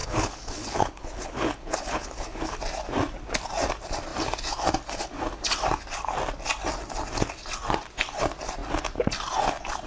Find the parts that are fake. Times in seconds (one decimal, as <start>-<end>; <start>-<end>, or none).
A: 0.0-2.6